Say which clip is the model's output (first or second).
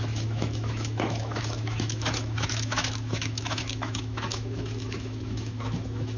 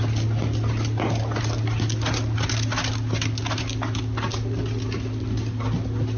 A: first